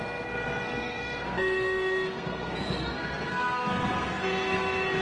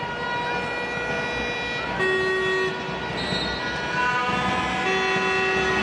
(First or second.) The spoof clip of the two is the first